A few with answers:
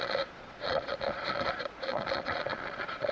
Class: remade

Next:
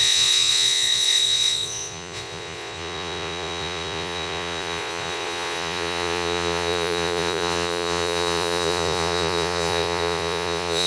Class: remade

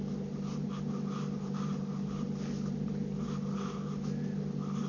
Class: recorded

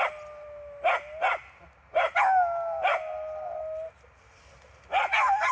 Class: recorded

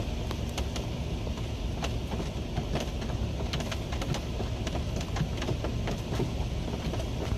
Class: recorded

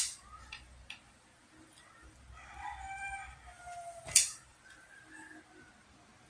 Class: recorded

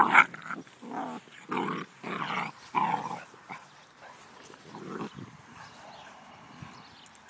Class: recorded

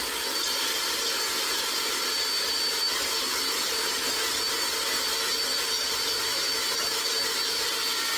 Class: recorded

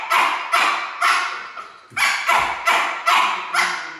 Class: recorded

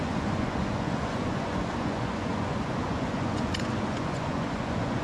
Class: remade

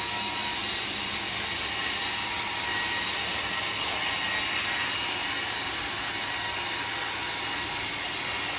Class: recorded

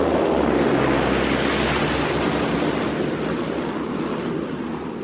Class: recorded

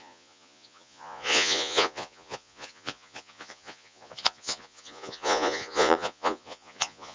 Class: remade